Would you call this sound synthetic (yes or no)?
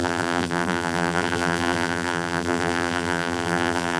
yes